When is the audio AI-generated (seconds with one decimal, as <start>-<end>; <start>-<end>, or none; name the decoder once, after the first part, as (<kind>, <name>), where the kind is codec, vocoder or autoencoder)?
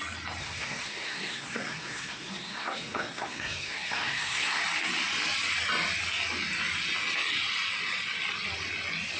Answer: 0.4-4.6 (codec, SNAC)